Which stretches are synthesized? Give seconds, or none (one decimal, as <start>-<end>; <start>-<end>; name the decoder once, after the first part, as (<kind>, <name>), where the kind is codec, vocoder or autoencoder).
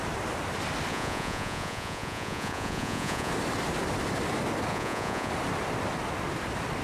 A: 0.9-3.3 (vocoder, Vocos); 4.7-5.3